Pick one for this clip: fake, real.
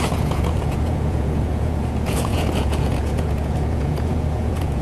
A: fake